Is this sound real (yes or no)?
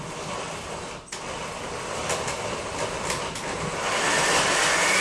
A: yes